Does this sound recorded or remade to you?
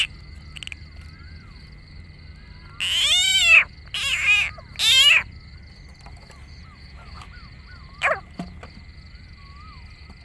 recorded